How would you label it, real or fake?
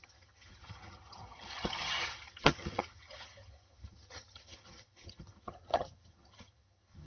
fake